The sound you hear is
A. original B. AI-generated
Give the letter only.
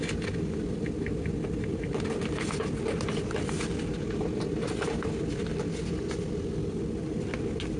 A